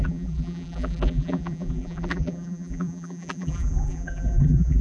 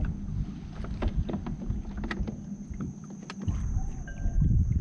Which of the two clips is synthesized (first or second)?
first